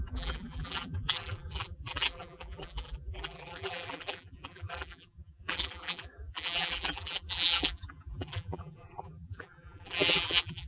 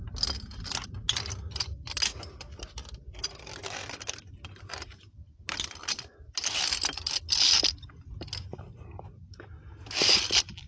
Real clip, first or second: second